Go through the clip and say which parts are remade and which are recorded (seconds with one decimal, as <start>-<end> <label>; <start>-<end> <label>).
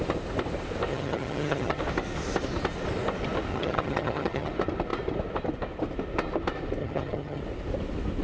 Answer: 0.0-0.9 recorded; 0.9-1.8 remade; 1.8-3.5 recorded; 3.5-4.5 remade; 4.5-6.8 recorded; 6.8-7.4 remade; 7.4-8.2 recorded